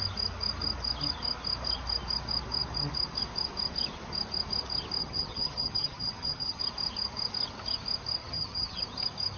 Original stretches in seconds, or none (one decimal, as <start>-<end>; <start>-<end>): 0.0-5.0; 6.6-8.2; 8.8-9.4

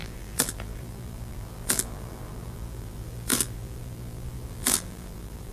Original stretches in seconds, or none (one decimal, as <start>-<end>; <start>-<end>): none

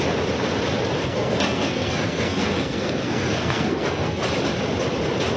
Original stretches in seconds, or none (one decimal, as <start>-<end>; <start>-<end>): 0.0-1.0; 4.2-5.4

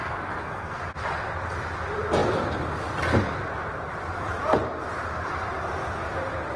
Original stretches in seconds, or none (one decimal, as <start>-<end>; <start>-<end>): 0.8-6.6